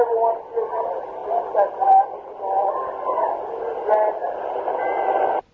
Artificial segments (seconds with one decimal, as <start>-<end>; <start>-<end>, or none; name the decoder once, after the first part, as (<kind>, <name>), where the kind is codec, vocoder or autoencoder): none